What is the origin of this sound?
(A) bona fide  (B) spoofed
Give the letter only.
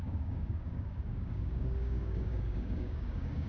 B